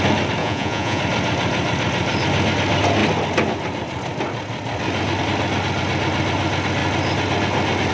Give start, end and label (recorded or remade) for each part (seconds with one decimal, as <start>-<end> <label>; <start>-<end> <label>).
0.0-0.4 recorded; 0.4-1.0 remade; 1.0-7.9 recorded